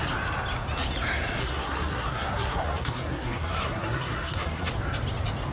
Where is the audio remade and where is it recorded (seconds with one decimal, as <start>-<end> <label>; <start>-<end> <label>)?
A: 0.0-1.4 recorded; 1.4-4.7 remade; 4.7-5.5 recorded